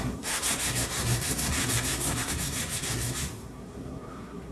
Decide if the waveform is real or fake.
fake